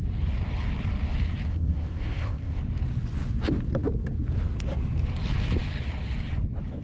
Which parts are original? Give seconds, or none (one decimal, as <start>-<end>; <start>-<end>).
0.0-1.5; 2.6-6.8